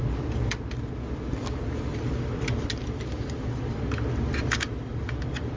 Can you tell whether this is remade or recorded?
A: recorded